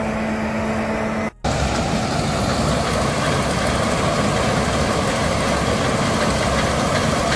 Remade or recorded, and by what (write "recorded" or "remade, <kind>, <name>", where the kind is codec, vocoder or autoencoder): recorded